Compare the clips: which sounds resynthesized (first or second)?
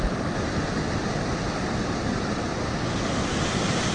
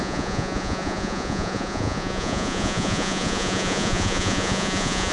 second